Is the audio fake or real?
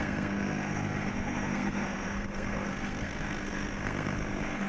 fake